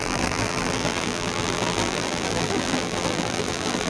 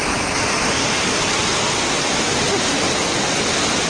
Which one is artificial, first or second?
first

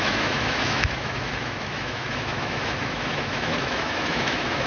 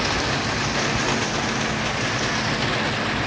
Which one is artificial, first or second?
first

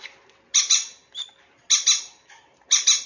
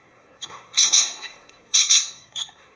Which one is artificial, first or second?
second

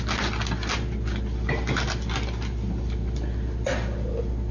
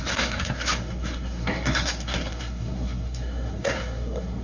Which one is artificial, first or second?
second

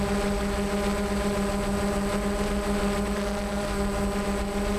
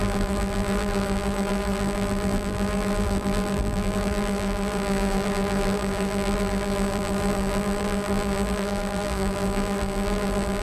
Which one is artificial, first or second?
second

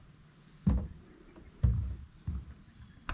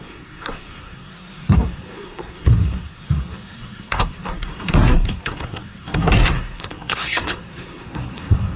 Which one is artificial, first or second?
second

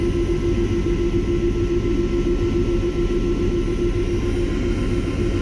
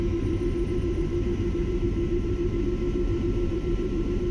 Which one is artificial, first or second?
second